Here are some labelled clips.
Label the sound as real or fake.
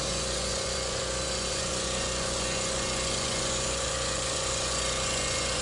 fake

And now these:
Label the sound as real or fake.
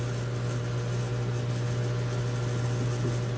real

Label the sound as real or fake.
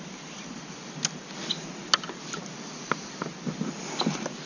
real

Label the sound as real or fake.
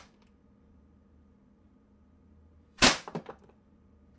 fake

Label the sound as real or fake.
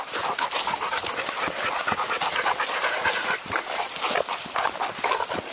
real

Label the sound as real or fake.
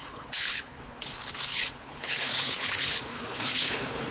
fake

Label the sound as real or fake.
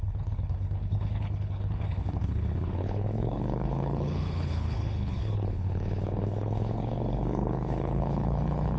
fake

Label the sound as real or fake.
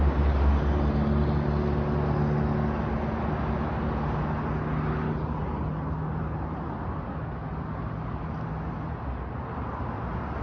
real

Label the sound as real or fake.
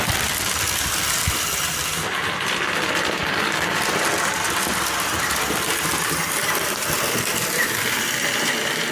fake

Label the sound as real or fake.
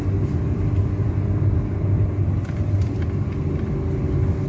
real